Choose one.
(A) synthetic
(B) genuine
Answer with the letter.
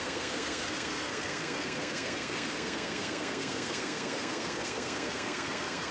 A